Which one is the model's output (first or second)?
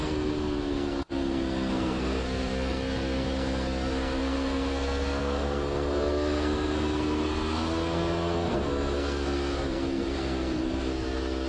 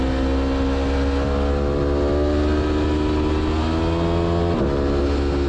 first